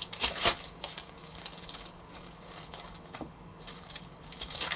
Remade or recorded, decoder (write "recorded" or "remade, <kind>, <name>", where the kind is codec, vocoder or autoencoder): remade, codec, DAC